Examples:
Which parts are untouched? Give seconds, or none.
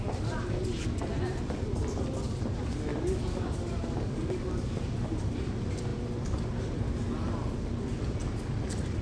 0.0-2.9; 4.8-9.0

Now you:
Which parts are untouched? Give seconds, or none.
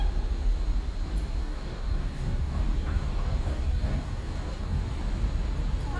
0.0-1.4; 4.8-6.0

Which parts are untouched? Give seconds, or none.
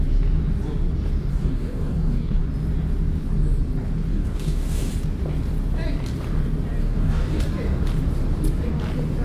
0.0-1.3; 2.4-4.1; 4.9-6.8; 7.4-9.2